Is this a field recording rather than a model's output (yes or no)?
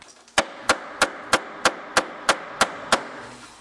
yes